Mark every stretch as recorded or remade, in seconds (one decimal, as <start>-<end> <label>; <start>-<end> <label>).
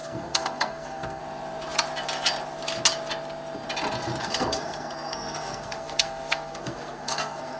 0.0-1.2 remade; 1.2-4.2 recorded; 4.2-7.6 remade